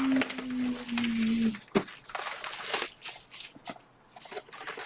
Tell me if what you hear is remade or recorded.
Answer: recorded